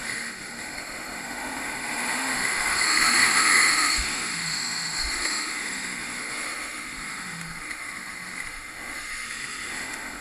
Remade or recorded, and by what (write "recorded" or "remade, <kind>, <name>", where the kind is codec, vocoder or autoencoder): remade, autoencoder, DAC-VAE